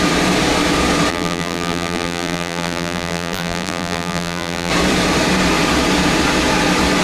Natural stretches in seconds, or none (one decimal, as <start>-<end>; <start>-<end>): 0.0-1.1; 4.7-7.0